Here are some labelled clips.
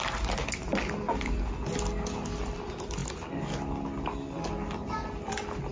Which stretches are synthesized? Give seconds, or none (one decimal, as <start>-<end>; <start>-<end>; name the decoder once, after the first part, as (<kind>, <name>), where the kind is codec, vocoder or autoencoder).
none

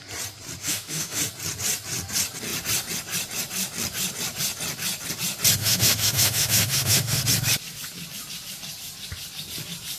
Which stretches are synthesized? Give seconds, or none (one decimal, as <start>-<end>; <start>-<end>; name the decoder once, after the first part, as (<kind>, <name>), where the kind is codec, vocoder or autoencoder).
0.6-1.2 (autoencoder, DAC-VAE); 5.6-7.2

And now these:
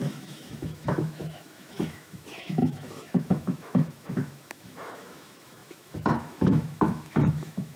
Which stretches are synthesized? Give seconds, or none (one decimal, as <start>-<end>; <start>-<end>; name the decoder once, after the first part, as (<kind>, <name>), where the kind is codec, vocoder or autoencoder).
0.0-7.8 (autoencoder, DAC-VAE)

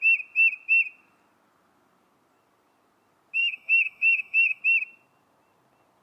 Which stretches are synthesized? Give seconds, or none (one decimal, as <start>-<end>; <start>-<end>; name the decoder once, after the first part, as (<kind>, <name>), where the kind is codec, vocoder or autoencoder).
3.4-4.6 (autoencoder, DAC-VAE)

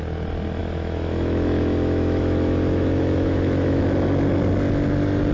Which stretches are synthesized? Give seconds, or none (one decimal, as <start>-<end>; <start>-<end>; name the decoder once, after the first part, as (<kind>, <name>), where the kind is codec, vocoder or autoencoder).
0.6-3.8 (autoencoder, DAC-VAE)

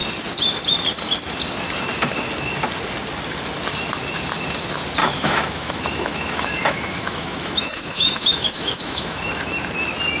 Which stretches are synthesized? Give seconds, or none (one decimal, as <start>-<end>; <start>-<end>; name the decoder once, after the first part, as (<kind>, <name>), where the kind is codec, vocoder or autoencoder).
5.0-9.5 (autoencoder, DAC-VAE)

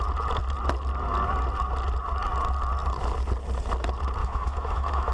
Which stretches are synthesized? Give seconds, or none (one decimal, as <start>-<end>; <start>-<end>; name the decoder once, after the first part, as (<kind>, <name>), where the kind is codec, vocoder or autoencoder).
4.2-5.1 (autoencoder, DAC-VAE)